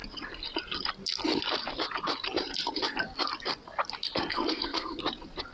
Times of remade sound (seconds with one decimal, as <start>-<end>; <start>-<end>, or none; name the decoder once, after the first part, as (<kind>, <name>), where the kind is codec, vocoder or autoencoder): 4.3-5.0 (codec, SNAC)